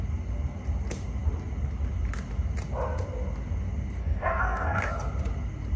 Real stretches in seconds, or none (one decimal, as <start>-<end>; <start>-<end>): 0.0-4.0; 4.9-5.8